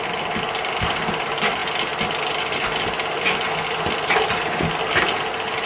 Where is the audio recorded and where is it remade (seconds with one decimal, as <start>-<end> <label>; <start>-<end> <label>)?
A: 0.0-5.7 recorded